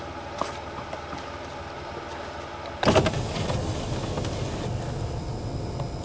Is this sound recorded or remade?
recorded